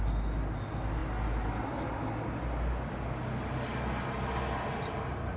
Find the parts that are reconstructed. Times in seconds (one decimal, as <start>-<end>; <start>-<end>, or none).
none